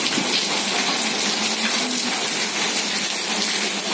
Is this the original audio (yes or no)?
yes